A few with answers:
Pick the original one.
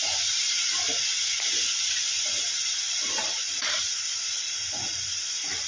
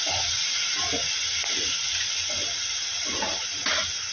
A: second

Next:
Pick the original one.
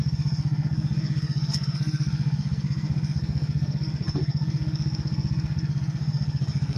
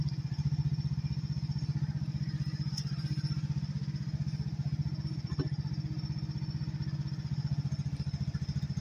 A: second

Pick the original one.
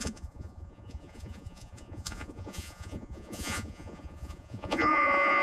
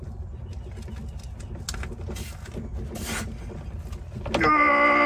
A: second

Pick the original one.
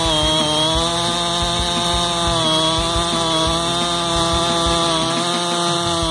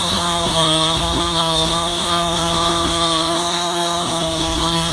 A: first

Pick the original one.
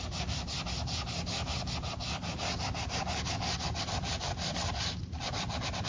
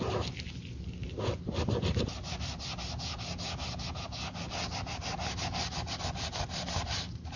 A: second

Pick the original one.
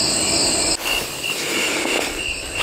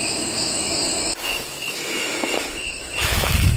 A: first